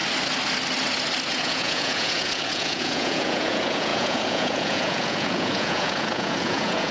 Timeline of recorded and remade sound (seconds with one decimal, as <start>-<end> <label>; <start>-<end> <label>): 0.0-1.3 recorded; 1.3-6.9 remade